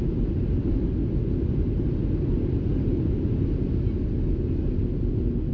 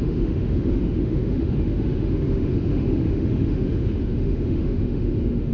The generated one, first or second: second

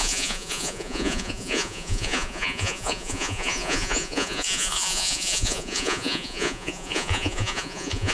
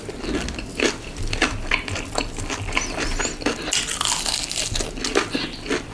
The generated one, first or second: first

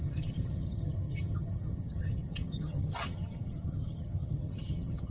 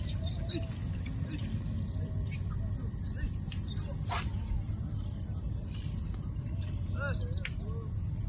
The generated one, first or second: first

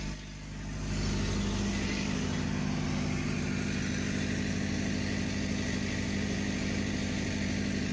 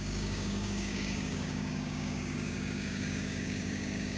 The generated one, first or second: second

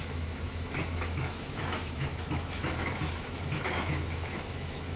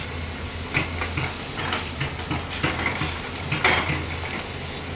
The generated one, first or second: first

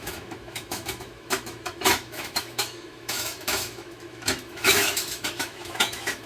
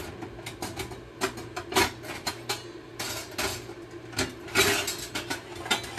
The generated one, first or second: first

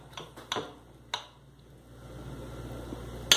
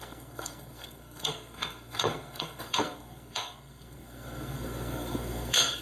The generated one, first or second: second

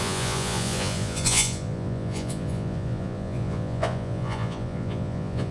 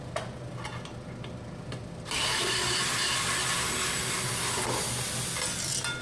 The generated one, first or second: first